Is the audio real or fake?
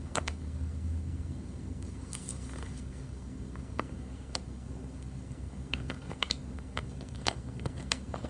fake